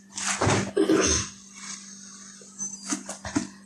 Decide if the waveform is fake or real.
real